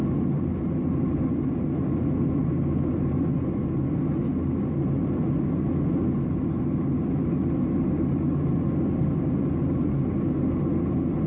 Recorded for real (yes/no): yes